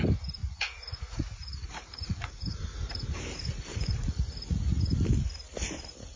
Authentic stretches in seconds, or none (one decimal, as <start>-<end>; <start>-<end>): 0.0-0.4; 3.2-3.7; 4.8-6.2